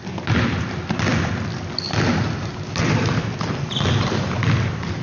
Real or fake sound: real